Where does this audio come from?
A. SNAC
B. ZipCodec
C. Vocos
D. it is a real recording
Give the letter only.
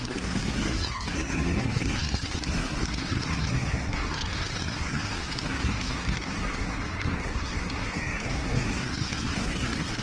A